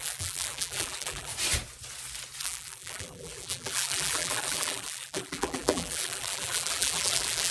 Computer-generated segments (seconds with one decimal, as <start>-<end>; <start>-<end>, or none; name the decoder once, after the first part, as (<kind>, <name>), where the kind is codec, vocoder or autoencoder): 0.0-1.3 (vocoder, BigVGAN v2); 2.4-7.5